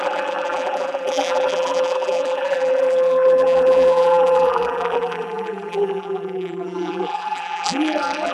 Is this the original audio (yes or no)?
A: no